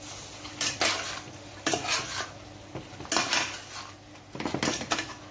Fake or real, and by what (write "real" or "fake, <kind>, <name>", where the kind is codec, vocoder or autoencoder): real